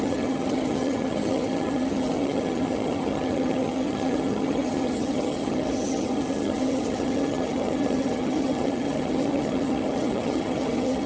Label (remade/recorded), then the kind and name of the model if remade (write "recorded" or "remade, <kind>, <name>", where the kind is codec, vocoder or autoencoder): remade, vocoder, HiFi-GAN